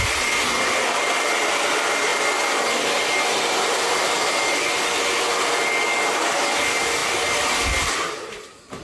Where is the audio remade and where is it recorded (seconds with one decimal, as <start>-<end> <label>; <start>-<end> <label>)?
0.0-8.8 recorded